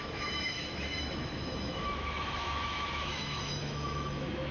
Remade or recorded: remade